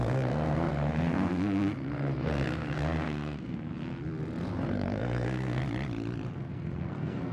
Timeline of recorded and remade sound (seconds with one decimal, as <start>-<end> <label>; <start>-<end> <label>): 0.0-3.7 remade; 3.7-4.6 recorded; 4.6-5.6 remade; 5.6-6.3 recorded; 6.3-7.3 remade